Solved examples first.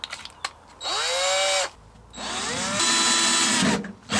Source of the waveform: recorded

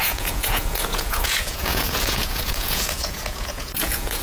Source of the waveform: remade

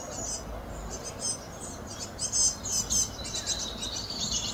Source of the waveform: recorded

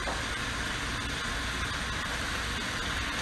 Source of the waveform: recorded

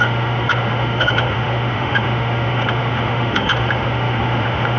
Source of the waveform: remade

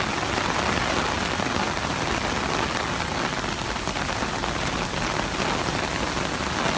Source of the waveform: recorded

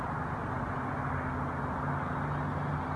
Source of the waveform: recorded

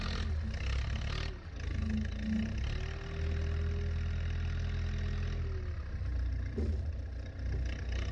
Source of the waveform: recorded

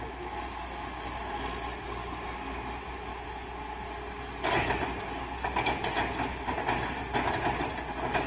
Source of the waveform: recorded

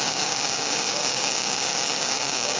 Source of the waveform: remade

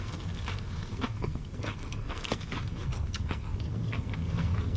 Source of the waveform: remade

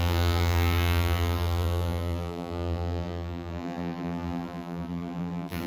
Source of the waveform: remade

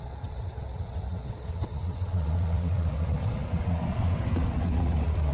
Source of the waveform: remade